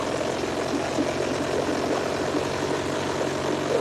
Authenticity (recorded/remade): recorded